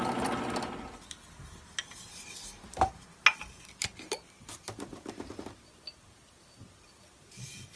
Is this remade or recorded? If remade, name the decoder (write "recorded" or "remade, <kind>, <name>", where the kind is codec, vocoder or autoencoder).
recorded